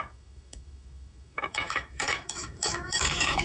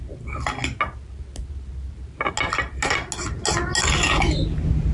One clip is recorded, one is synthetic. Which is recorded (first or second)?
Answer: second